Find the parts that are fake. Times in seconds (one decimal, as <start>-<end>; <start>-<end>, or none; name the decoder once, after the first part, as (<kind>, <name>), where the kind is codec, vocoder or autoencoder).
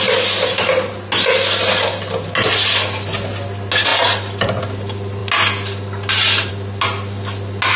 none